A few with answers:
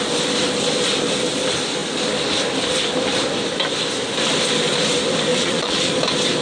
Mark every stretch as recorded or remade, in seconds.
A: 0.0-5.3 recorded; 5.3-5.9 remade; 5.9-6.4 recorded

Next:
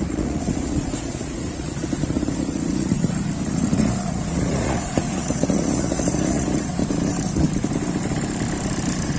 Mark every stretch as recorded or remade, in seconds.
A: 0.0-6.8 remade; 6.8-9.2 recorded

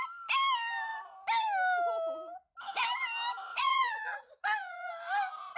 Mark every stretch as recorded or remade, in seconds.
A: 0.0-3.5 recorded; 3.5-4.9 remade; 4.9-5.6 recorded

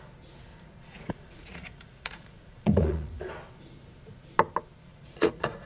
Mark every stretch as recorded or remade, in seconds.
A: 0.0-0.5 recorded; 0.5-3.2 remade; 3.2-4.9 recorded; 4.9-5.7 remade

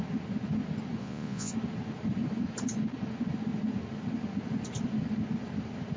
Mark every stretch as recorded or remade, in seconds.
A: 0.0-1.0 recorded; 1.0-1.5 remade; 1.5-6.0 recorded